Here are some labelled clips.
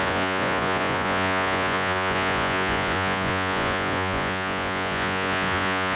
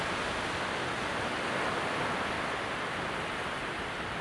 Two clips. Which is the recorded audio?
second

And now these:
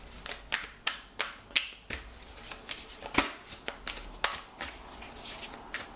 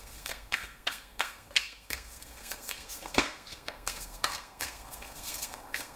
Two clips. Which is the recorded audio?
first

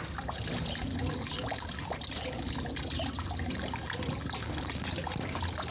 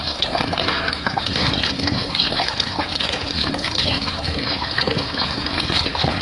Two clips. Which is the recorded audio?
first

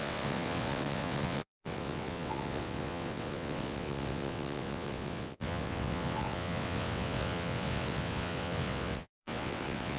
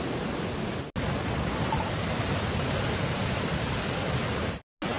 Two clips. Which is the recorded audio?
second